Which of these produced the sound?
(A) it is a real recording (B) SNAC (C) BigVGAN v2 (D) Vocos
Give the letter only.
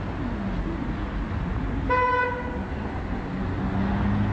A